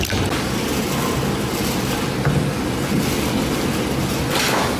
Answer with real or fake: real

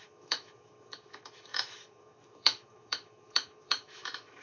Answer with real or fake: fake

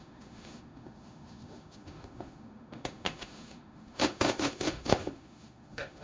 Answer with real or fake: fake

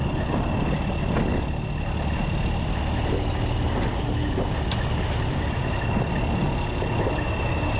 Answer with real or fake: real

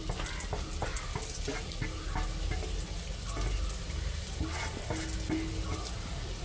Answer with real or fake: real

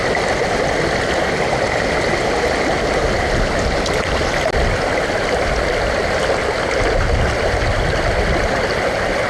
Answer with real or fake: real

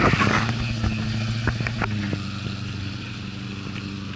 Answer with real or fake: real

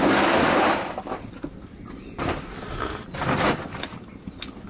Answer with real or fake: real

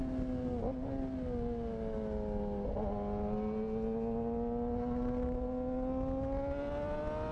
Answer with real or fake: real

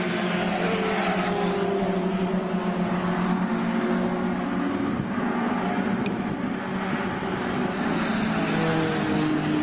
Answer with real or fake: real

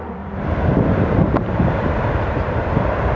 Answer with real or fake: fake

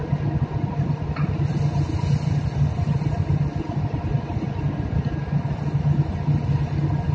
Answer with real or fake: real